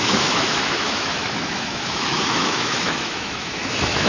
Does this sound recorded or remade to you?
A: remade